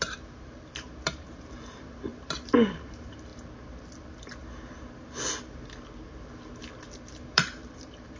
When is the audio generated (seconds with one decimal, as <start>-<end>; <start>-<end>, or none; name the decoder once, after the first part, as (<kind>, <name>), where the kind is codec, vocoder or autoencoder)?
0.0-3.3 (vocoder, BigVGAN v2); 7.1-8.2